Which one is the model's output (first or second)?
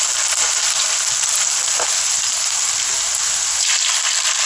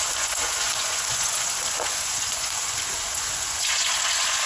second